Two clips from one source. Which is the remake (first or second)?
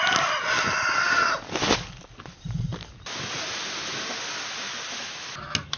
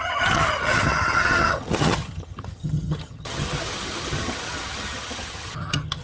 second